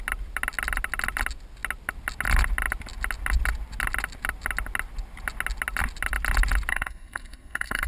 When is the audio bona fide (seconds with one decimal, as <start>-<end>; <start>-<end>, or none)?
0.0-6.7